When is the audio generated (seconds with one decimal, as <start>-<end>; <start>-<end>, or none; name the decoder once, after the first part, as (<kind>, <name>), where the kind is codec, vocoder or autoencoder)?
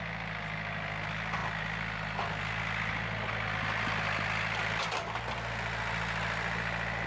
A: none